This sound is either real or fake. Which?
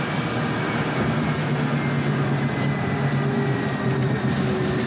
real